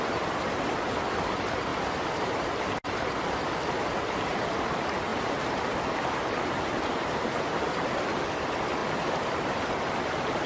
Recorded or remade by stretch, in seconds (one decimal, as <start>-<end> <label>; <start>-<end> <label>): 0.0-1.7 recorded; 1.7-2.5 remade; 2.5-10.5 recorded